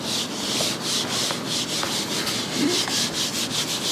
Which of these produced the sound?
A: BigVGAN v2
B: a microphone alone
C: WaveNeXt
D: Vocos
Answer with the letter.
B